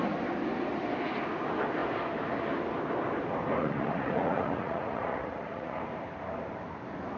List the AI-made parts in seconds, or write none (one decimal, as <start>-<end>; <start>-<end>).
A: 3.6-5.8